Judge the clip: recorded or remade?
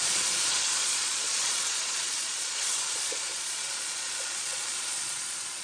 remade